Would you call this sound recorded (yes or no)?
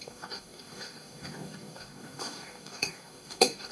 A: no